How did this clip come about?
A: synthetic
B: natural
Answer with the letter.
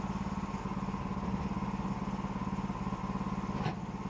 B